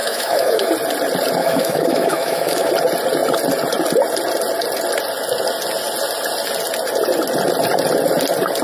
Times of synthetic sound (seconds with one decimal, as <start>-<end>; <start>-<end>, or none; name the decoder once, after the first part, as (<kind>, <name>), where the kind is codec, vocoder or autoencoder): 0.0-0.7 (autoencoder, DAC-VAE); 1.4-2.7